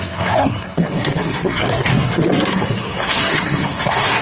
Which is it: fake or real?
fake